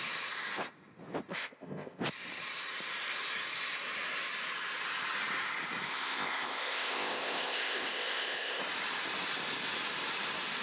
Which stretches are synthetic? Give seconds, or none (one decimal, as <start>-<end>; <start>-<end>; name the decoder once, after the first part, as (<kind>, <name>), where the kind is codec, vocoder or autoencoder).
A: 1.3-2.0 (codec, ZipCodec); 5.9-8.6